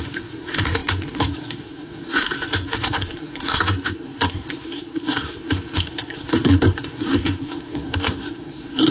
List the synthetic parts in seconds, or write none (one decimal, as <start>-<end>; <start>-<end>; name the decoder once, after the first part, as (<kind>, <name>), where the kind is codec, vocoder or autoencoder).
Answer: 0.0-8.9 (codec, SNAC)

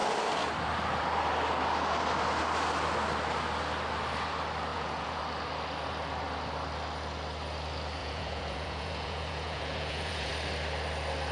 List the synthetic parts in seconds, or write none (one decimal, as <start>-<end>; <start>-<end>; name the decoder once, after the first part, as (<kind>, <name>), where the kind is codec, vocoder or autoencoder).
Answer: 4.7-5.2 (vocoder, Vocos); 8.0-10.3

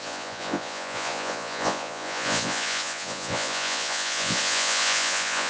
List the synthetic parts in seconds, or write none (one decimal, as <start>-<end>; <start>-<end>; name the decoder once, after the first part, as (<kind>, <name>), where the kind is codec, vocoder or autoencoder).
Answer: 0.0-5.5 (vocoder, Vocos)

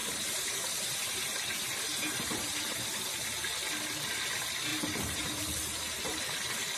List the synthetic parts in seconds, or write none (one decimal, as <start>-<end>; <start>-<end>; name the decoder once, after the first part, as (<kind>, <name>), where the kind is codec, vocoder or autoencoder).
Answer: 0.0-3.0 (vocoder, BigVGAN v2); 4.7-6.2

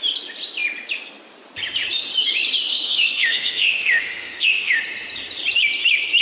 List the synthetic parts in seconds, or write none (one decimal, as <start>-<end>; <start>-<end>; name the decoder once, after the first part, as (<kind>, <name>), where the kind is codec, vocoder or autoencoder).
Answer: 2.7-4.8 (autoencoder, DAC-VAE)